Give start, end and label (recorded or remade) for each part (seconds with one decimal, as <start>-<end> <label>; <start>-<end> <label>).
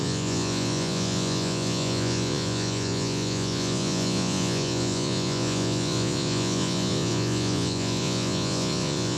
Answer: 0.0-9.2 remade